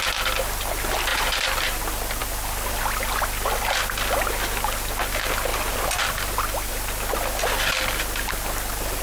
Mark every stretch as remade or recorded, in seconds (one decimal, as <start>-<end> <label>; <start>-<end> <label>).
0.0-1.1 recorded; 1.1-1.8 remade; 1.8-9.0 recorded

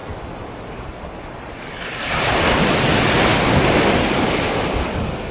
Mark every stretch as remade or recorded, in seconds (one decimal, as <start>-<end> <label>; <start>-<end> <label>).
0.0-3.3 remade; 3.3-4.4 recorded; 4.4-5.3 remade

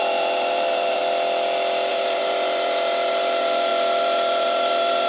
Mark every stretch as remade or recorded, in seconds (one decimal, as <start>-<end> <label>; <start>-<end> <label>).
0.0-1.0 remade; 1.0-1.9 recorded; 1.9-5.1 remade